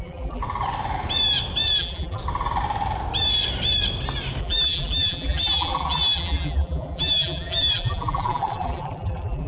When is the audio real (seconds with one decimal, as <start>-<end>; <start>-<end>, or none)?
0.4-1.8; 2.2-4.4